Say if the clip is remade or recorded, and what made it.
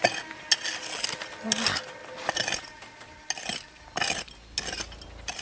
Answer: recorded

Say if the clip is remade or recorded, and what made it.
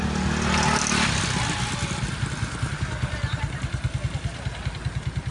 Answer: recorded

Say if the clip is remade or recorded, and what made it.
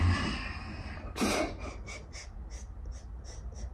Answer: recorded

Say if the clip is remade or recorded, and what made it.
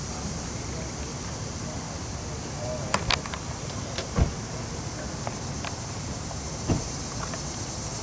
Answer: recorded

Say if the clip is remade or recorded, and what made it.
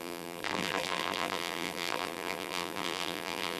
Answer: remade, vocoder, BigVGAN v2